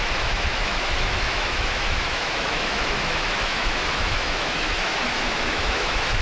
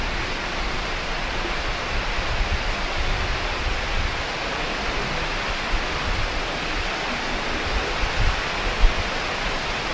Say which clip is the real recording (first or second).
second